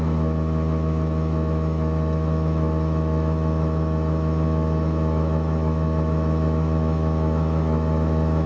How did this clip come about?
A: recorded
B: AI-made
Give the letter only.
B